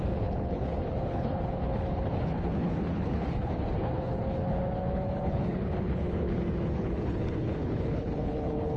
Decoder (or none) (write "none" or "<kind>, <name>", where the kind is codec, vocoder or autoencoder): codec, HILCodec